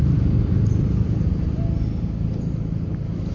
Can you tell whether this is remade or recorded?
recorded